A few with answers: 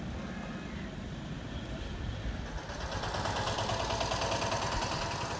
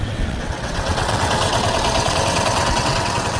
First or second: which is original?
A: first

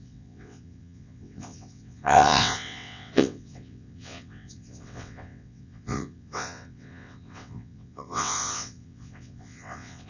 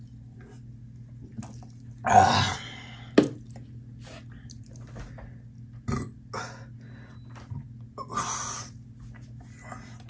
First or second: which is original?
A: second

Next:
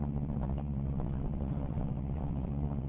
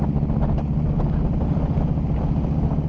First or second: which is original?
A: second